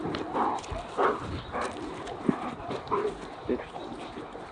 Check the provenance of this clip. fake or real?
real